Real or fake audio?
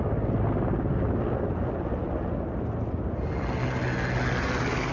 real